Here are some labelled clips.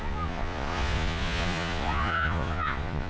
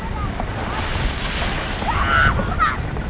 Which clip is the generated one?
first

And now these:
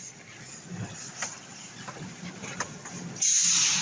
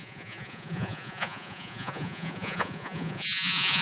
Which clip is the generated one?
second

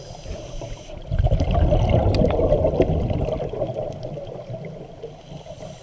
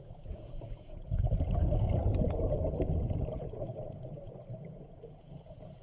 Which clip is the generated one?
second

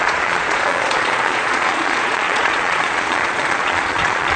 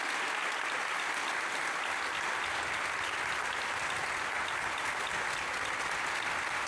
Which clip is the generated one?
first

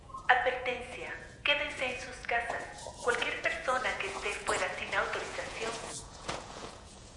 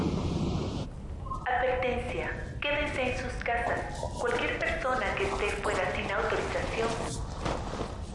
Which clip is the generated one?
first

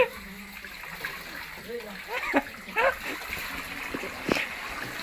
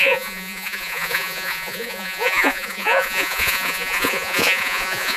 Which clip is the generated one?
second